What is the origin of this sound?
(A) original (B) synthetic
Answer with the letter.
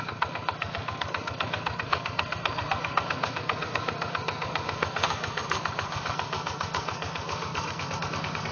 B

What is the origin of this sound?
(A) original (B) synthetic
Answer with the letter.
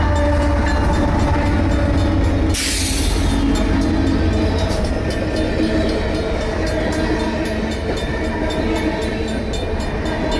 A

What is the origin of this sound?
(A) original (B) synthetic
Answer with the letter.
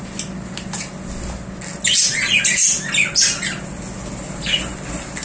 A